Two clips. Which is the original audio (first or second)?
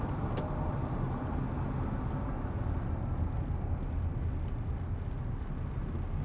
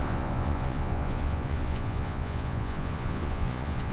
first